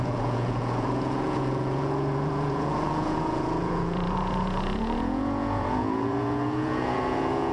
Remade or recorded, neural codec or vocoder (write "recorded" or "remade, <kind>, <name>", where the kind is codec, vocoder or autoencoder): remade, vocoder, Vocos